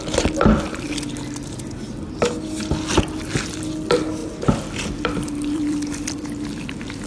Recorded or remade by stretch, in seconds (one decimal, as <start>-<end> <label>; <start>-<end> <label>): 0.0-4.2 recorded; 4.2-7.1 remade